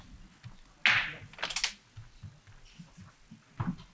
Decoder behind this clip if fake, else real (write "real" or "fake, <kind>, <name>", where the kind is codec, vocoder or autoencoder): real